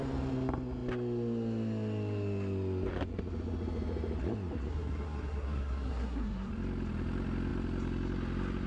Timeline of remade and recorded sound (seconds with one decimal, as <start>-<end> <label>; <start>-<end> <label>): 0.0-4.7 recorded; 4.7-6.5 remade; 6.5-8.7 recorded